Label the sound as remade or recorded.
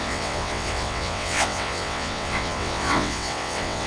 remade